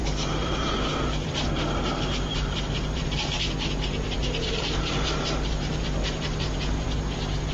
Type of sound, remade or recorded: remade